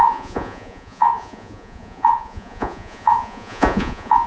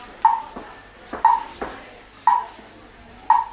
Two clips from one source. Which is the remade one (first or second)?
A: first